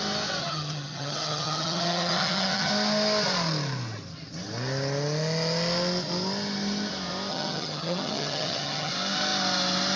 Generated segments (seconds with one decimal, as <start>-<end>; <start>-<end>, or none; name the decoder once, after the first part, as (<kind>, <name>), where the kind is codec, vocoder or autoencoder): 0.4-2.7 (vocoder, HiFi-GAN); 7.3-8.9